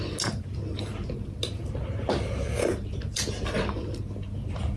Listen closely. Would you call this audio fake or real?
real